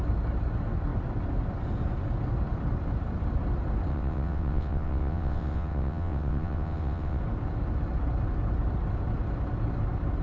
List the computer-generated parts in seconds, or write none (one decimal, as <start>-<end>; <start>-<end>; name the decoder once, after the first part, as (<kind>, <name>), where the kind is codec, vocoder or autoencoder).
3.9-7.2 (vocoder, WaveNeXt)